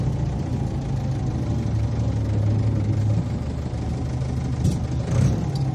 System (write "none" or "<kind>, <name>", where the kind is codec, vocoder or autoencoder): none